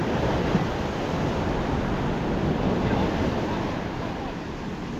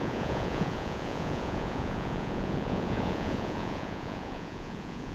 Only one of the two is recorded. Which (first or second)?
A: first